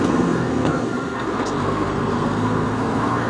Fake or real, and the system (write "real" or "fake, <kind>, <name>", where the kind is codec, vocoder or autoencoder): fake, codec, SNAC